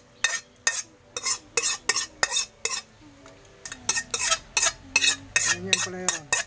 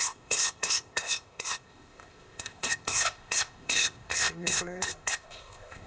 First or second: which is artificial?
second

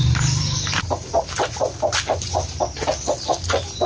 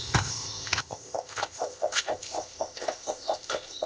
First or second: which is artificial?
second